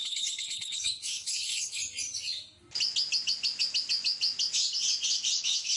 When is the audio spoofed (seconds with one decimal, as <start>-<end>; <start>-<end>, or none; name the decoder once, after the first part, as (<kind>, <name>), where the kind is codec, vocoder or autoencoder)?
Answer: 0.0-1.8 (codec, HILCodec); 5.3-5.8